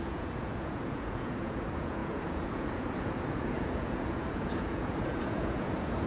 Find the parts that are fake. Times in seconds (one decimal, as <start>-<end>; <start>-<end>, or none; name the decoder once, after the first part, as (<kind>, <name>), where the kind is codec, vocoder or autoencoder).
0.0-6.1 (vocoder, Vocos)